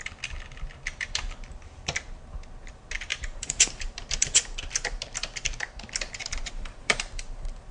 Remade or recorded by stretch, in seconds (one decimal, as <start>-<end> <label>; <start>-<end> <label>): 0.0-3.1 recorded; 3.1-4.7 remade; 4.7-6.2 recorded; 6.2-7.7 remade